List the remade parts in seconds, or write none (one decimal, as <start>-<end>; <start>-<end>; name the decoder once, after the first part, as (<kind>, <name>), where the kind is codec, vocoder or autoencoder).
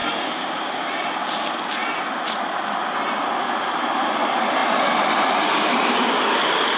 none